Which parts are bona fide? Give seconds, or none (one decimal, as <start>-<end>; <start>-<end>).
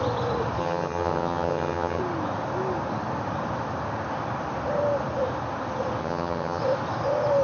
0.0-0.6; 2.0-6.0; 6.6-7.4